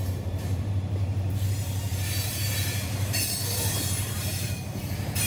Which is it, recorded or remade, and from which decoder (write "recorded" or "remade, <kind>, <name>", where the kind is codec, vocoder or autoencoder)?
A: remade, vocoder, BigVGAN v2